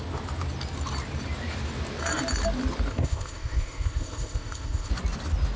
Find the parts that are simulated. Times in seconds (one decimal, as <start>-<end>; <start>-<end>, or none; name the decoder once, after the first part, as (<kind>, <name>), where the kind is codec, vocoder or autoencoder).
2.9-4.9 (codec, ZipCodec)